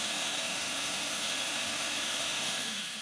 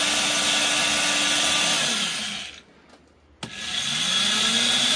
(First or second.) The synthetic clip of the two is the first